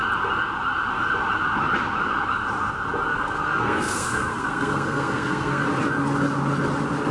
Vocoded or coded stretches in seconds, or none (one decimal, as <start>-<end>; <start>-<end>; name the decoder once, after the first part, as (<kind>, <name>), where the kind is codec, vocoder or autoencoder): 3.1-5.6 (codec, SNAC)